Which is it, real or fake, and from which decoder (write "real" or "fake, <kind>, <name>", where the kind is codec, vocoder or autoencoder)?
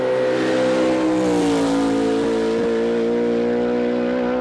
real